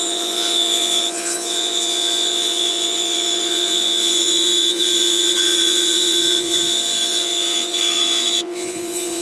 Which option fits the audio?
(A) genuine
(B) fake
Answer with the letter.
B